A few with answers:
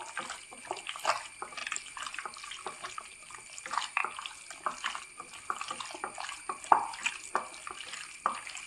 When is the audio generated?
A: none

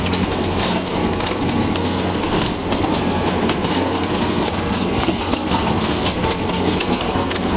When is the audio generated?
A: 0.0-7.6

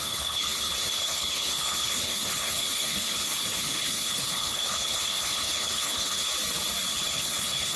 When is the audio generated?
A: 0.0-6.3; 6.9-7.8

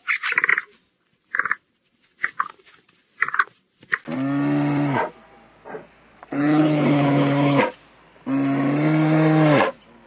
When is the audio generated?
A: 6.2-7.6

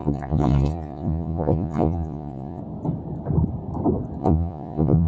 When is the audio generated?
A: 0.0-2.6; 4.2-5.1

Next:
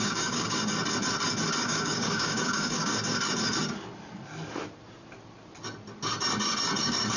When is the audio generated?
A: 0.0-0.8; 1.6-2.9; 6.8-7.2

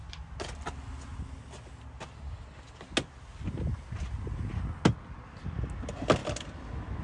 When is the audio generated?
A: none